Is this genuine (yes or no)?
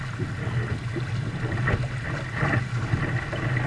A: yes